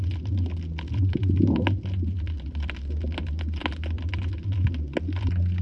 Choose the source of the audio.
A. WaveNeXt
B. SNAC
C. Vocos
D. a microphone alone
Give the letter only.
D